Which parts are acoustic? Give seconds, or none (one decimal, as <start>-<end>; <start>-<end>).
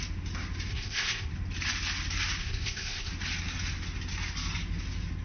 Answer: 0.0-0.7; 1.3-2.4; 3.1-5.2